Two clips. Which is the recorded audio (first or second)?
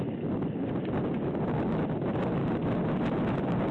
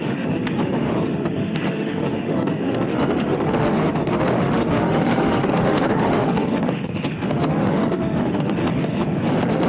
first